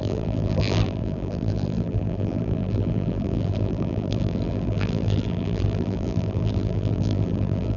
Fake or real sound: fake